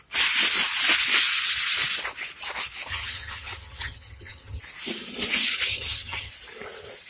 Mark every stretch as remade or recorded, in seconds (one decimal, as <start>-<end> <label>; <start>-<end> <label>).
0.0-2.9 recorded; 2.9-4.6 remade; 4.6-5.7 recorded; 5.7-6.3 remade; 6.3-7.1 recorded